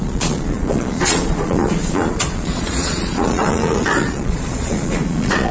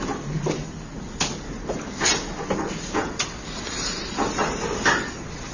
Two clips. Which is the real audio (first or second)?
second